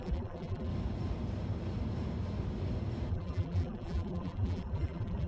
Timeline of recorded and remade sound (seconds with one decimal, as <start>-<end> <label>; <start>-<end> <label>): 0.0-0.7 remade; 0.7-3.1 recorded; 3.1-5.3 remade